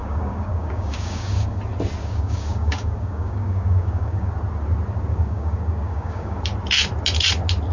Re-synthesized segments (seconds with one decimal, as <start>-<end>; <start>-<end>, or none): 0.0-1.6; 2.0-4.3; 5.1-6.4